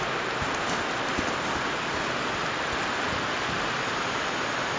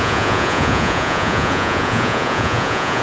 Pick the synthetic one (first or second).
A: second